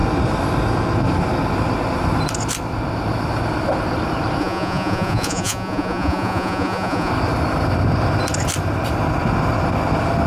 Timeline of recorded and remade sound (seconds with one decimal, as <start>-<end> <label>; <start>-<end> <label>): 0.0-4.4 recorded; 4.4-7.1 remade; 7.1-10.3 recorded